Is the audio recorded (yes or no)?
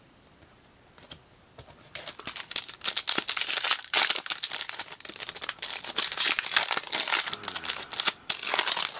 yes